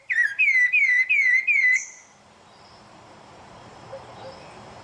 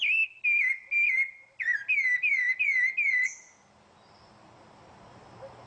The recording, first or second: second